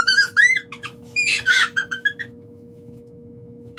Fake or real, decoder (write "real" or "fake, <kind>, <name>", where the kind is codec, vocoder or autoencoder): fake, autoencoder, DAC-VAE